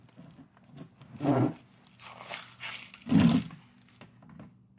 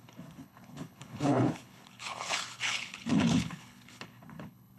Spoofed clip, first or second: second